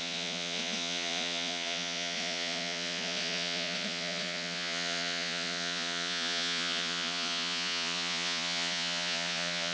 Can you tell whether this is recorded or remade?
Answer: remade